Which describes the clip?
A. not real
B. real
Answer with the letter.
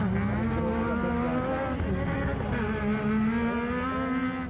B